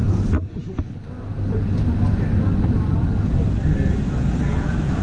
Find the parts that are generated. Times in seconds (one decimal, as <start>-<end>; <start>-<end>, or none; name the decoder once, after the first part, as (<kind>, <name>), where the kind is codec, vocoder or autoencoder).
none